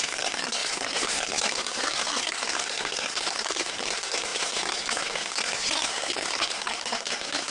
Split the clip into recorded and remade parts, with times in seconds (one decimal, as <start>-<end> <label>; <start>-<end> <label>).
0.0-7.5 remade